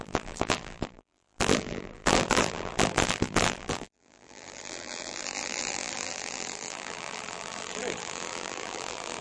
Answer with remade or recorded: remade